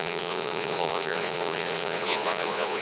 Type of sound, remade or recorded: remade